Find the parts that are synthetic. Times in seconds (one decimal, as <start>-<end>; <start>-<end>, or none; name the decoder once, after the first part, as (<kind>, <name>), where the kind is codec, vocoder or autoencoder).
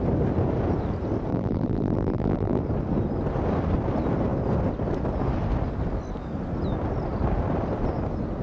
1.3-2.6 (vocoder, BigVGAN v2)